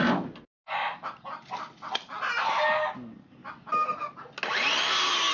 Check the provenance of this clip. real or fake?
real